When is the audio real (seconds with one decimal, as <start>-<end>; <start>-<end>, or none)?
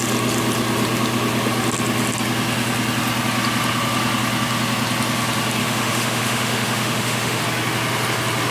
0.0-5.6; 7.4-8.5